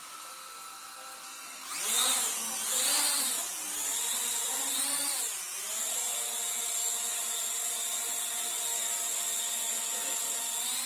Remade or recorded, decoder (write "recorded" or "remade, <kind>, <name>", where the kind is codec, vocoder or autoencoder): recorded